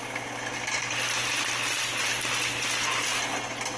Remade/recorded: recorded